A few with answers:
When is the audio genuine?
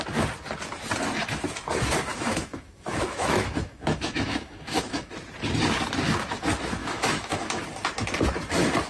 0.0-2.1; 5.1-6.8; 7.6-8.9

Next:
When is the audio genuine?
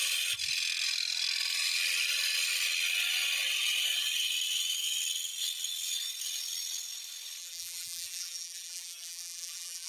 0.0-7.4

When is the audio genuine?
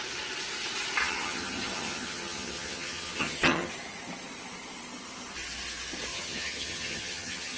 0.0-1.0; 3.7-6.1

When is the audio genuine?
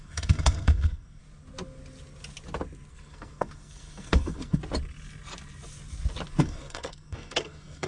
1.2-2.9; 4.6-6.4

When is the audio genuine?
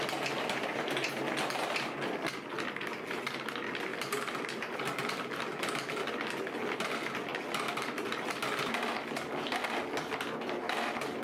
0.0-0.7; 1.3-3.9; 4.4-11.2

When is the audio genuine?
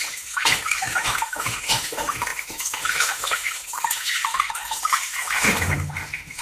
none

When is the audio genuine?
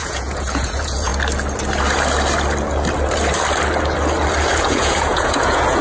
1.1-4.6